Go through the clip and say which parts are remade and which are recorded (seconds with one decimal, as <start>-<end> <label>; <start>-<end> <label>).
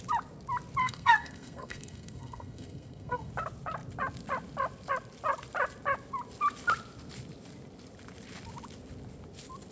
0.0-0.8 recorded; 0.8-3.3 remade; 3.3-9.7 recorded